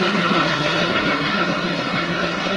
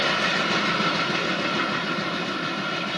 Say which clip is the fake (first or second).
first